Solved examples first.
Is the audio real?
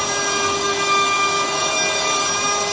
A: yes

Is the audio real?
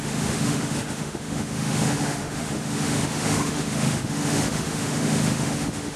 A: no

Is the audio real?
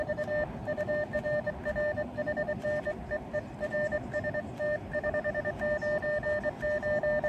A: yes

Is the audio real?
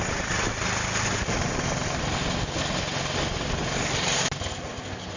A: yes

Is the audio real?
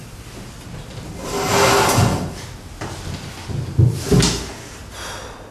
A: yes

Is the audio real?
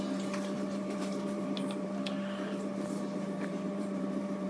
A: no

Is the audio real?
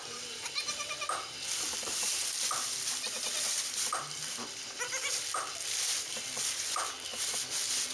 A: no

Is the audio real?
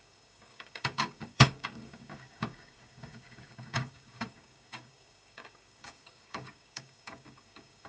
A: no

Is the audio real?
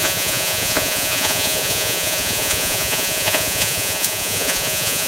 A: no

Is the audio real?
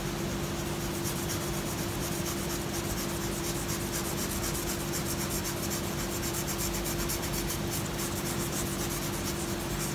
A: yes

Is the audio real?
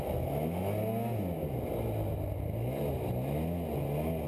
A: yes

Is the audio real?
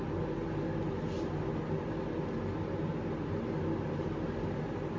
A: yes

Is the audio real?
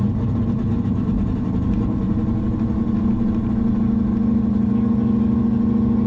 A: yes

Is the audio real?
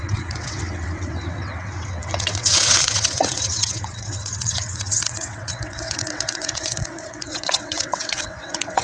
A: no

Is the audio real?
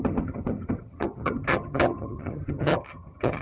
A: no